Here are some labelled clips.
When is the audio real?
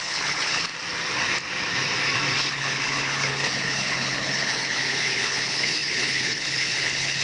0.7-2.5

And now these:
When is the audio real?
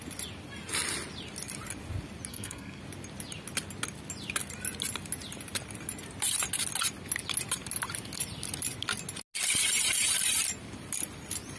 0.0-2.3; 2.8-11.6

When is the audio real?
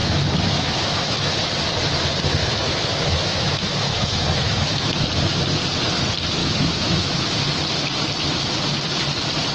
1.3-2.4; 5.0-6.4; 7.2-9.5